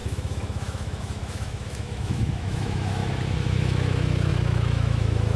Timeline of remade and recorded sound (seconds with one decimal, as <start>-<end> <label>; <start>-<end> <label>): 0.0-3.0 remade; 3.0-3.6 recorded; 3.6-5.4 remade